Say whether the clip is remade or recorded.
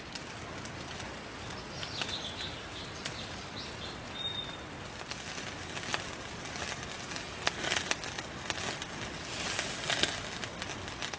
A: recorded